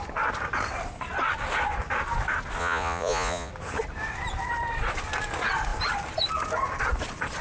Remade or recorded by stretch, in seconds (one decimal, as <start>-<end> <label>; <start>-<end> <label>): 0.0-2.6 recorded; 2.6-3.5 remade; 3.5-7.4 recorded

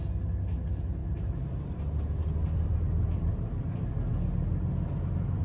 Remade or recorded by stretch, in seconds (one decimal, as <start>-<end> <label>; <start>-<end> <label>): 0.0-1.0 recorded; 1.0-1.6 remade; 1.6-2.4 recorded; 2.4-3.6 remade; 3.6-5.4 recorded